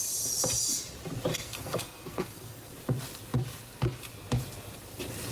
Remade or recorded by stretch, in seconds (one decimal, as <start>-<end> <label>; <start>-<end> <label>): 0.0-1.3 recorded; 1.3-2.7 remade; 2.7-5.3 recorded